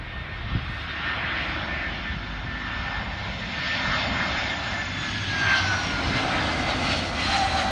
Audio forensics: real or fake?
real